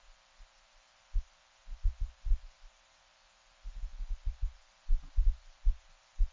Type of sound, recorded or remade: recorded